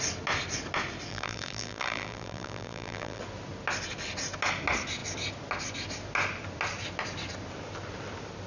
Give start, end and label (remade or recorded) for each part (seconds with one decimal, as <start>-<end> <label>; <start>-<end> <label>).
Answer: 0.0-1.1 recorded; 1.1-3.2 remade; 3.2-8.5 recorded